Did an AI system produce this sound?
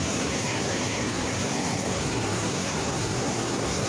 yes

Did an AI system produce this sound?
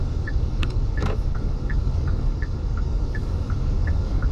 yes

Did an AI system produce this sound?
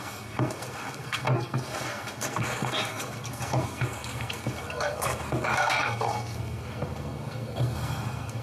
yes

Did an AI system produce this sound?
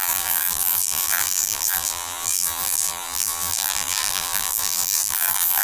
yes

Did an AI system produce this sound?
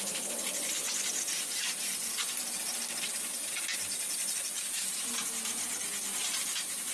no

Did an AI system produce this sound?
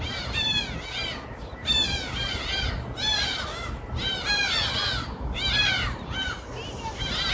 no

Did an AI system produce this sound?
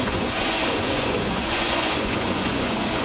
yes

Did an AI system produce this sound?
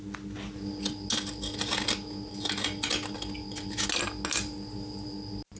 no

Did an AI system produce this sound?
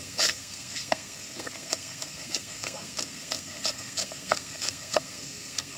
yes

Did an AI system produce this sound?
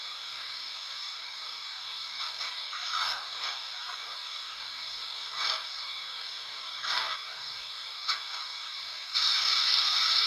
yes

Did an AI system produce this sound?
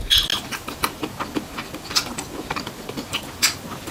no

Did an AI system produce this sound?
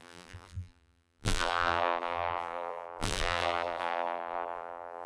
yes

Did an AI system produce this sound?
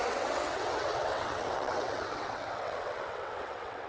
yes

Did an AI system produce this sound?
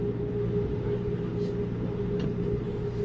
no